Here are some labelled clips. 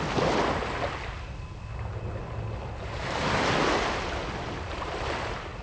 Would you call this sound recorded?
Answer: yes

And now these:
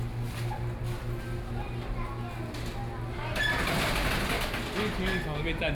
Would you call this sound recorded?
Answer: yes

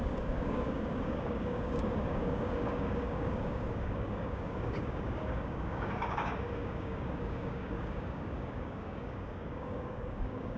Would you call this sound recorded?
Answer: no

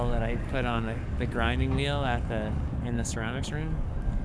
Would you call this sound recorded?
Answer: no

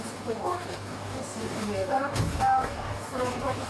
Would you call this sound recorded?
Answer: no